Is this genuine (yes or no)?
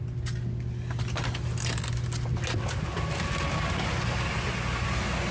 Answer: yes